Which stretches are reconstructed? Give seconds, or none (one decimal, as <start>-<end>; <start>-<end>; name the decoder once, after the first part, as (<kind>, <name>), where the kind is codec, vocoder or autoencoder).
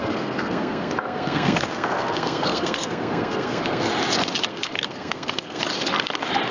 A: 0.0-3.9 (codec, SNAC); 4.5-5.6